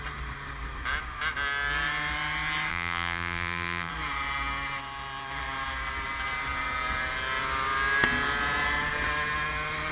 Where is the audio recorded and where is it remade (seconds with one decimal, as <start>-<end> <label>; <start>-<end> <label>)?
0.0-2.7 recorded; 2.7-3.9 remade; 3.9-9.9 recorded